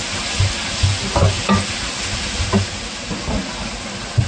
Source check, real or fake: real